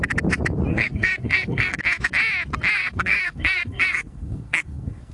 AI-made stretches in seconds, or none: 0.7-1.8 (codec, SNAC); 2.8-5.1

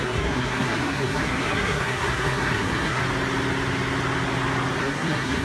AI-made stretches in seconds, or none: 0.0-3.0 (codec, SNAC); 4.8-5.4